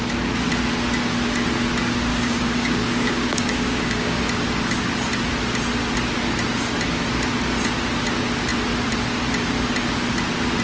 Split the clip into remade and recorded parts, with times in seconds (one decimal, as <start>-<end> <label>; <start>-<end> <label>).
0.0-2.1 recorded; 2.1-4.2 remade; 4.2-10.6 recorded